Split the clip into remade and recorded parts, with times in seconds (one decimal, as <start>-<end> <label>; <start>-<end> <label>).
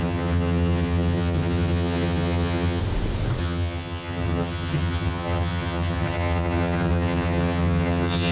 0.0-2.8 remade; 2.8-3.4 recorded; 3.4-8.3 remade